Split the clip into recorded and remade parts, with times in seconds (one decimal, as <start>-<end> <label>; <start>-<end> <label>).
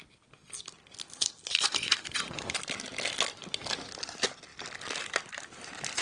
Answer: 0.0-1.5 recorded; 1.5-2.6 remade; 2.6-6.0 recorded